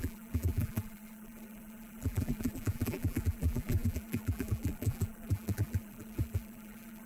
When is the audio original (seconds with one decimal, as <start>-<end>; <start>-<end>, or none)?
none